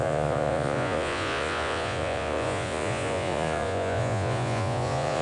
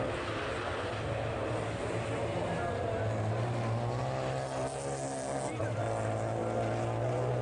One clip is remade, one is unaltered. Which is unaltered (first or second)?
second